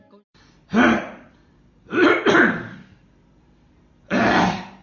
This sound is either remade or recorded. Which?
remade